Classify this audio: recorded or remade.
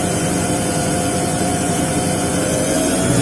remade